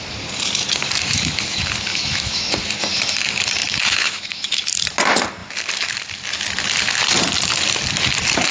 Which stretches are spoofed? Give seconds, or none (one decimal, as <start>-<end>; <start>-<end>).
1.9-2.4; 3.6-4.7